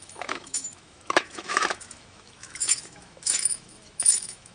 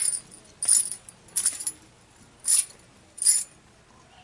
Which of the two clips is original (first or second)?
second